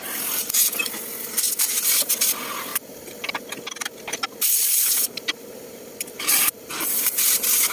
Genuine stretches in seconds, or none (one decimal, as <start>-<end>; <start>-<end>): 0.0-2.7; 3.3-4.6; 7.1-7.7